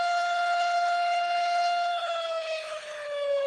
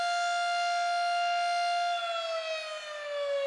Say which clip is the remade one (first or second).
first